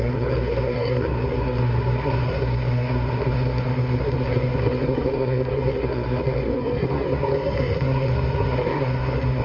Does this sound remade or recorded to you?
remade